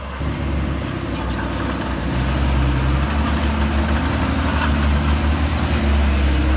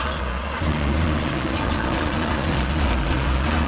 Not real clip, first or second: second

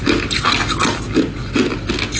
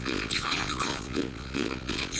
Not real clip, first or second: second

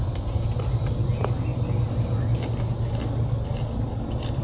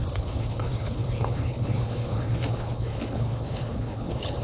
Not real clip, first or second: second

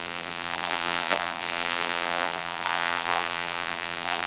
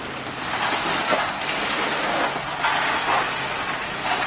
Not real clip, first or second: first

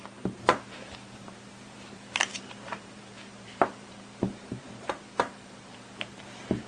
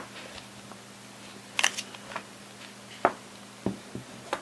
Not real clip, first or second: first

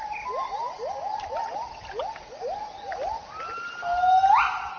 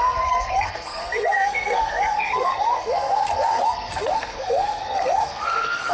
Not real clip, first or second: second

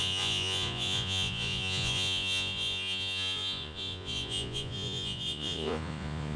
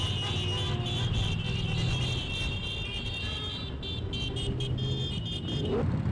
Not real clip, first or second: first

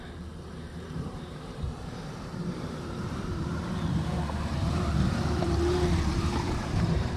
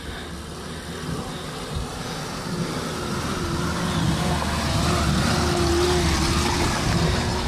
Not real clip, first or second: first